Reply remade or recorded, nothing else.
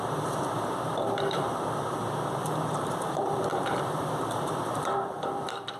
remade